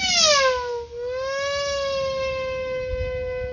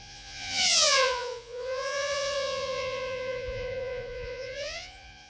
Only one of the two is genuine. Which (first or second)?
first